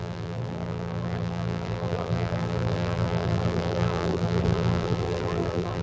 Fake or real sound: fake